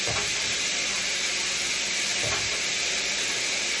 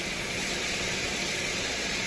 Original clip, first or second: first